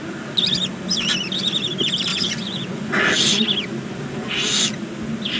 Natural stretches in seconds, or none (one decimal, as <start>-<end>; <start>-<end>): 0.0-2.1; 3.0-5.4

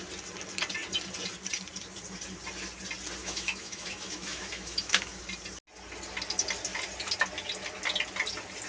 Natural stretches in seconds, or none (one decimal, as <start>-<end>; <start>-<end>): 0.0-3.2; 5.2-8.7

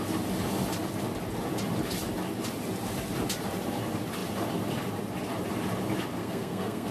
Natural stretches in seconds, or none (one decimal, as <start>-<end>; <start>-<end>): 0.0-6.2